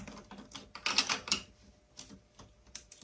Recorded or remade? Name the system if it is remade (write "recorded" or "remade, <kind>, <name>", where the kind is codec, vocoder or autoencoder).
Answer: recorded